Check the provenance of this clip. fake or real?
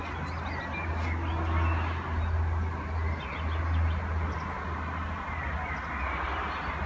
real